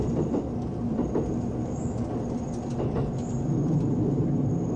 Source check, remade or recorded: recorded